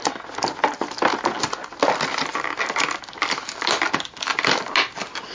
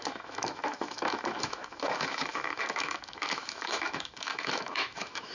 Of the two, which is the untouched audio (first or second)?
first